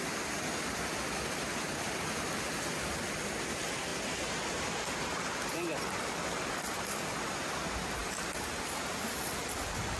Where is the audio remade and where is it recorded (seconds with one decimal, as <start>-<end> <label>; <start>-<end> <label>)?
0.0-10.0 recorded

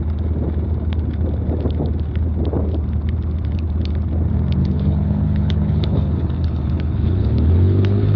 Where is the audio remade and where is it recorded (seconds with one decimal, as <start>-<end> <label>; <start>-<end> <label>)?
0.0-4.6 recorded; 4.6-8.2 remade